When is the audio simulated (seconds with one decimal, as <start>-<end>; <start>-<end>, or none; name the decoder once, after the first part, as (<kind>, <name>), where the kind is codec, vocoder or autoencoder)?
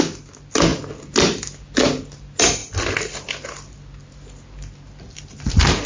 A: none